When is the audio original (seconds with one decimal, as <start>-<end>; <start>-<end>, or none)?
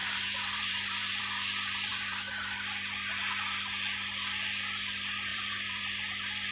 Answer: 1.2-1.9; 2.4-5.3; 5.8-6.5